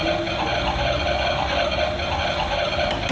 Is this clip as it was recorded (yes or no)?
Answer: yes